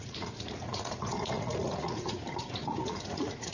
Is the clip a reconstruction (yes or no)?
yes